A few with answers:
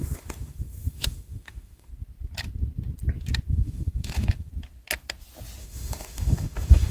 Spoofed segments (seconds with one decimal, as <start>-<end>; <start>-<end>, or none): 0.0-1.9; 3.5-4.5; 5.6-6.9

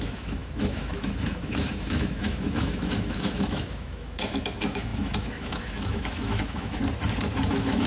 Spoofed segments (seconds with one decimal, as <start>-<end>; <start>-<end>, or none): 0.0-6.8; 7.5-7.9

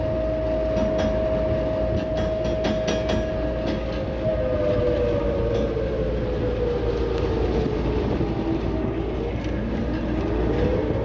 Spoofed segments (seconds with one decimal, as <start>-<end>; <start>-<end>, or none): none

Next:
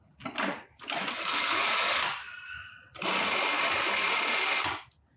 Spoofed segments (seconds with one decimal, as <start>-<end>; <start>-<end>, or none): none

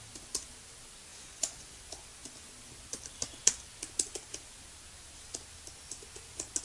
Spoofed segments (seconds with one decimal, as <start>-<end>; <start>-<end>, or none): 1.1-1.8

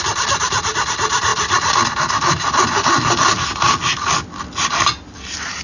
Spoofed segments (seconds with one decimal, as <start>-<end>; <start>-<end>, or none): none

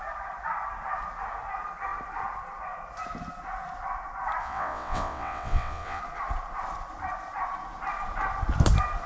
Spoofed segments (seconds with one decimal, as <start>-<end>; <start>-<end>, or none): 4.4-6.0